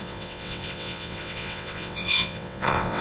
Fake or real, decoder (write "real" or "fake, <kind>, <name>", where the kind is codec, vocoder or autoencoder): fake, vocoder, WaveNeXt